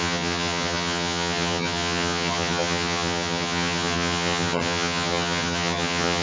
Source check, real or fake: fake